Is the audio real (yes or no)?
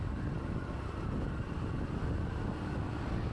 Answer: yes